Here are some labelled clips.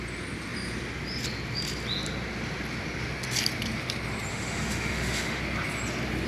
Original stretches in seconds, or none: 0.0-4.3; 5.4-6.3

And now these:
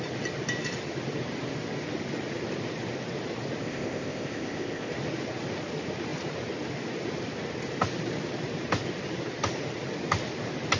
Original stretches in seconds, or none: 0.0-3.6; 4.9-10.8

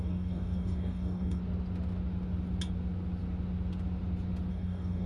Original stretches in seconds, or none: 1.4-4.5

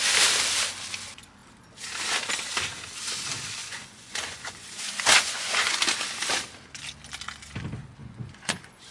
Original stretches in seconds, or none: 0.0-3.6; 5.8-8.0